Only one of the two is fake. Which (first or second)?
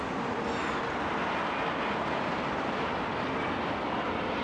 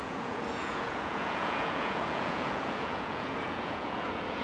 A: second